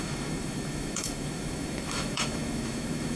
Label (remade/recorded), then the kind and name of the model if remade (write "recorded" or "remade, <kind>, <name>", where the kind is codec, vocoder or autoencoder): remade, autoencoder, DAC-VAE